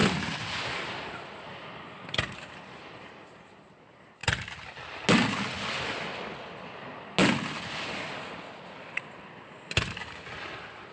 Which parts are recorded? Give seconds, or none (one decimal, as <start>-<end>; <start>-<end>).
0.0-10.9